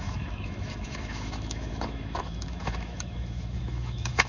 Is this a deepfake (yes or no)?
yes